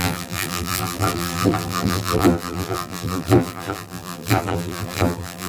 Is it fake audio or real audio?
fake